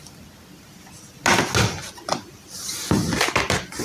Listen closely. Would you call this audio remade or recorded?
recorded